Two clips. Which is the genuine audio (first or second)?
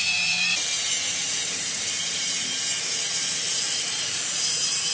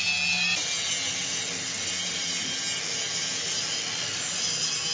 second